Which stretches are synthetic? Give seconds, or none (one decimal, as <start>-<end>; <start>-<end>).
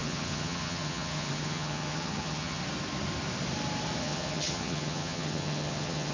0.0-2.6; 4.0-6.1